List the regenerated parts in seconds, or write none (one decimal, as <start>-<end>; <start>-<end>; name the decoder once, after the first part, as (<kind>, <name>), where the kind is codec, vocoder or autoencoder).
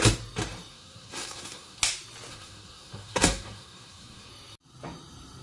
0.7-1.8 (codec, SNAC); 2.3-4.3